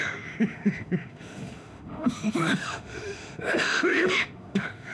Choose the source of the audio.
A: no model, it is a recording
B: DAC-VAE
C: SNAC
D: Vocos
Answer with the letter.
B